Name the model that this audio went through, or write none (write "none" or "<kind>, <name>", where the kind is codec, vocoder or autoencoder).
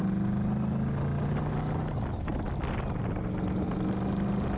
none